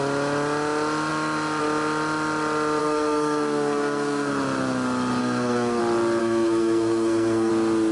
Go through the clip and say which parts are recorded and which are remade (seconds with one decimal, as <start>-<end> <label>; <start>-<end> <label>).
0.0-2.8 recorded; 2.8-4.3 remade; 4.3-5.2 recorded; 5.2-5.8 remade; 5.8-6.2 recorded; 6.2-7.5 remade; 7.5-7.9 recorded